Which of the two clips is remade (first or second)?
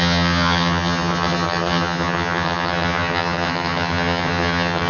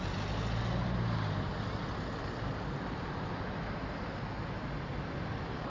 first